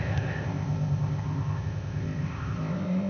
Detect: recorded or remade remade